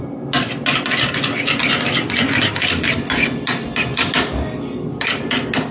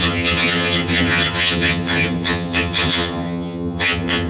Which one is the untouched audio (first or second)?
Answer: first